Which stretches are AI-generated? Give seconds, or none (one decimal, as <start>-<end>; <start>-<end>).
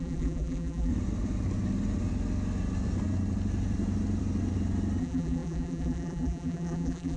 0.0-0.9; 5.0-7.2